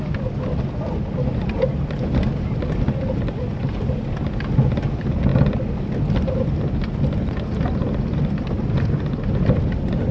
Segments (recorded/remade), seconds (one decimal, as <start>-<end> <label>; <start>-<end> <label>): 0.0-10.1 recorded